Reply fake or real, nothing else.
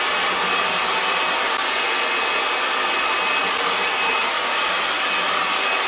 real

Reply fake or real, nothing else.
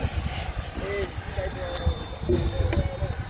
real